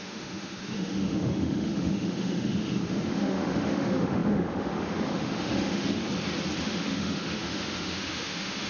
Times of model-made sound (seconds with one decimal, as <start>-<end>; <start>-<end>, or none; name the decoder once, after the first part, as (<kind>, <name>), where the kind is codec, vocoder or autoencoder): 0.0-6.0 (autoencoder, DAC-VAE); 6.6-8.7